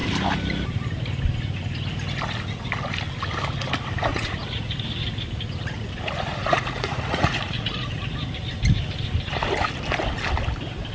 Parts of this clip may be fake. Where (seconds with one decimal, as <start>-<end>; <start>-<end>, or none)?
4.1-4.7; 6.4-8.0